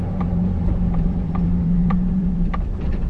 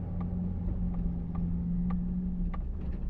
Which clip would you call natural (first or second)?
second